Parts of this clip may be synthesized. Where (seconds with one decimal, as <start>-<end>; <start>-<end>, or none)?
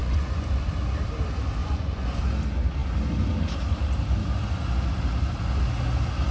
0.0-0.7; 1.6-2.2